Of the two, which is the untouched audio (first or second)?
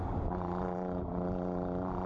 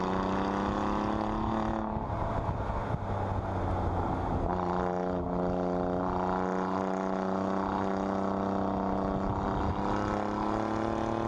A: second